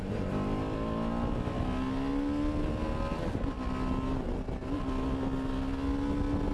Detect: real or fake real